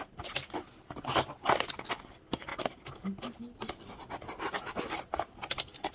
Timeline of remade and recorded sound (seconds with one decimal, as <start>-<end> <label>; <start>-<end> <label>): 0.0-5.9 recorded